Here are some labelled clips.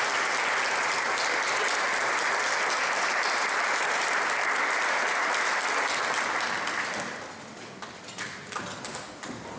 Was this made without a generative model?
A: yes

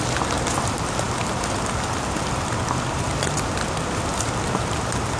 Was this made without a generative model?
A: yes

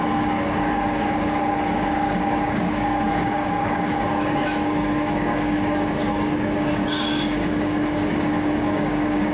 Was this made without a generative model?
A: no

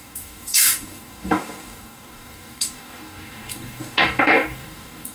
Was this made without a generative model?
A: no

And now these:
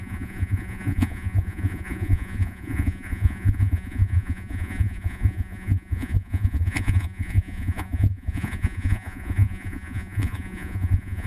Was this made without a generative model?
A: no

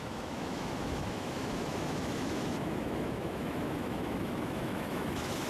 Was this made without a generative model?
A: no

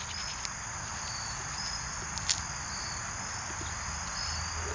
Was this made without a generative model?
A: yes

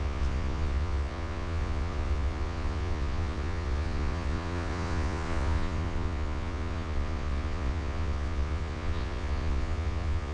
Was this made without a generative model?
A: no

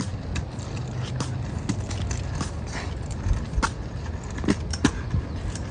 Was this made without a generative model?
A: yes